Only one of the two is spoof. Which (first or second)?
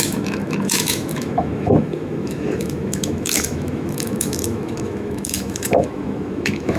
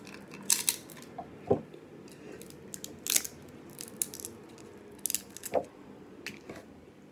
first